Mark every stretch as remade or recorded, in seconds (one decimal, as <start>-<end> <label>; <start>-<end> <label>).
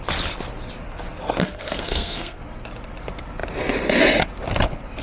0.0-1.4 recorded; 1.4-2.4 remade; 2.4-5.0 recorded